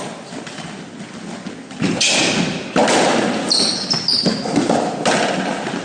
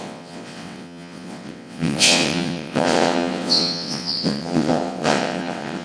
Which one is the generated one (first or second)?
second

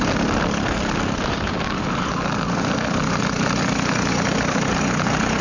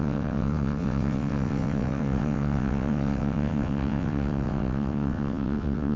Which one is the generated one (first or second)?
second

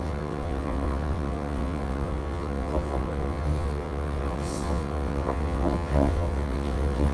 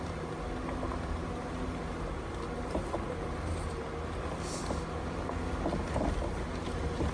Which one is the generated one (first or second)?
first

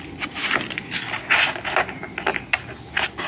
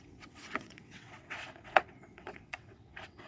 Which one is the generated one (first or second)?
second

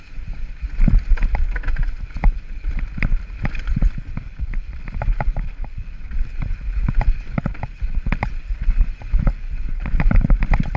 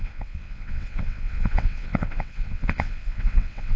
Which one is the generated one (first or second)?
second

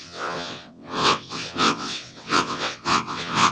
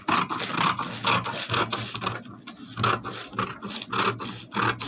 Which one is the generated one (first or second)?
first